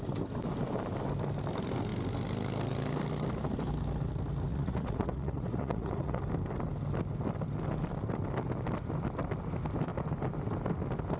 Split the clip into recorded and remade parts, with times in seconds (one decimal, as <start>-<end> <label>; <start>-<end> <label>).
0.0-4.5 recorded; 4.5-6.2 remade; 6.2-11.2 recorded